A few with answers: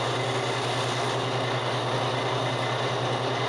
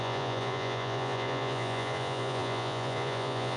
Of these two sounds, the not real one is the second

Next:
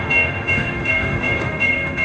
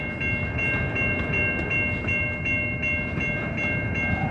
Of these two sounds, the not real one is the first